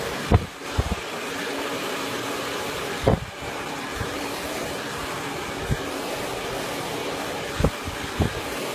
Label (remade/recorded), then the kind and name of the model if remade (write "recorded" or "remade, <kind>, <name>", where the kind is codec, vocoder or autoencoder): remade, vocoder, BigVGAN v2